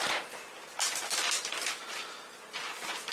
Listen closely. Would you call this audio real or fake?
real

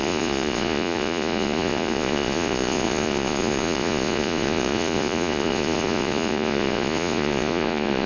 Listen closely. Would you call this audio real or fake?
fake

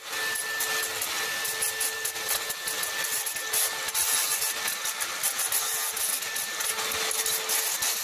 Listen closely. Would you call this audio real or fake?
real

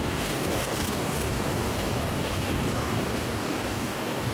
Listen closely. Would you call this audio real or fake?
fake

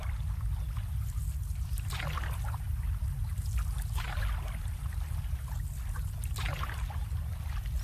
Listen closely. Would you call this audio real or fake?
real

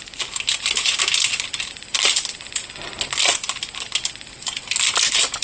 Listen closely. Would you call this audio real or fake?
real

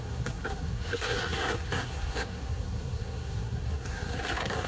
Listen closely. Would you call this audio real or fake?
fake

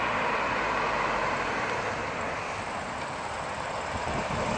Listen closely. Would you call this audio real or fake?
real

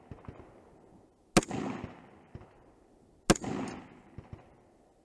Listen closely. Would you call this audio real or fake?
real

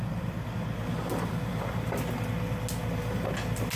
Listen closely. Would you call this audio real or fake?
real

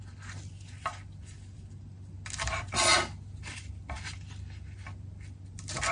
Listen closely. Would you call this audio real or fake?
real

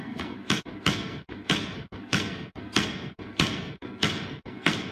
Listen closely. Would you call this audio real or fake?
fake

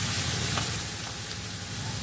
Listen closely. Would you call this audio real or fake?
fake